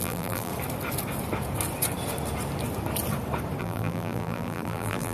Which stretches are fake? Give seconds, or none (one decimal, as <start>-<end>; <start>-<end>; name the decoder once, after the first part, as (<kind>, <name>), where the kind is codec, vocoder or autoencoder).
0.0-0.5 (vocoder, BigVGAN v2); 3.6-5.1